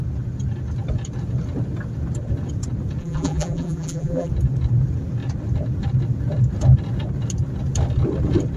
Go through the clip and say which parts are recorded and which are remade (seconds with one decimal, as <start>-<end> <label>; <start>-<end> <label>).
0.0-3.0 recorded; 3.0-4.3 remade; 4.3-8.6 recorded